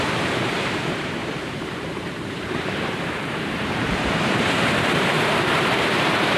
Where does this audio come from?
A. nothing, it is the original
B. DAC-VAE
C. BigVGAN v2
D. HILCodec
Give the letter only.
C